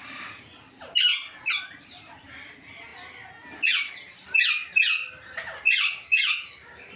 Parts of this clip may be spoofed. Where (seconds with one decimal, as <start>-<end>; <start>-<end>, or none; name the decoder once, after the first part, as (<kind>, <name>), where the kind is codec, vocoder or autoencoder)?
0.0-1.1 (vocoder, BigVGAN v2); 1.6-2.9; 3.9-7.0